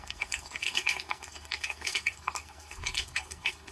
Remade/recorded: remade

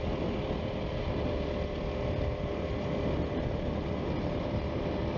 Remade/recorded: recorded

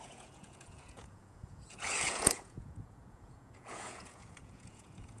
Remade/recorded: remade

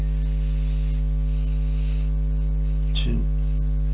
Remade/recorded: recorded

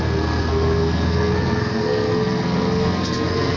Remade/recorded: remade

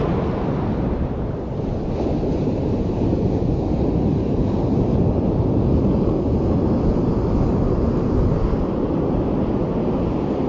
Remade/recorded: recorded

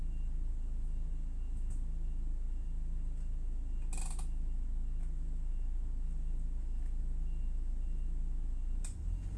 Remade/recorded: recorded